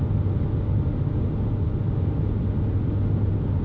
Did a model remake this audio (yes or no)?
no